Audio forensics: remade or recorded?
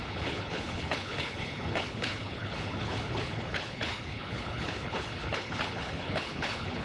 remade